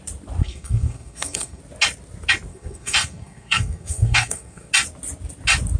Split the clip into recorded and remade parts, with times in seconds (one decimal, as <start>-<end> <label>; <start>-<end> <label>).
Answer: 0.0-0.4 recorded; 0.4-1.6 remade; 1.6-2.5 recorded; 2.5-4.7 remade; 4.7-5.8 recorded